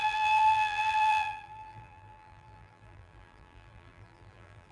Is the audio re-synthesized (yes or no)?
yes